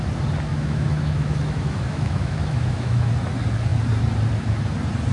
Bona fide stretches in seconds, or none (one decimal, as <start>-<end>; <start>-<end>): 0.0-0.5; 3.1-5.1